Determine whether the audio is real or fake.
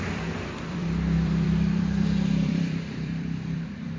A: fake